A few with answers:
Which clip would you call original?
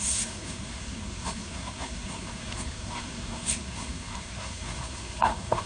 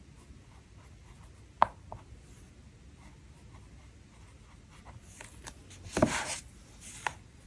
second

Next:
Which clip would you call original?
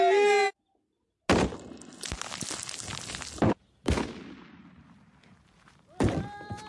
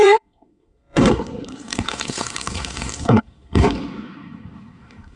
first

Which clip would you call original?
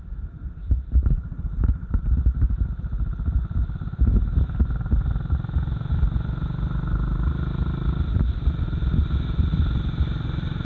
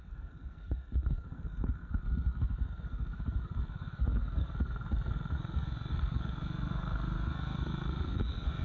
first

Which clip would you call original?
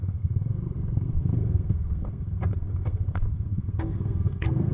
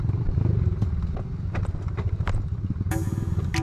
second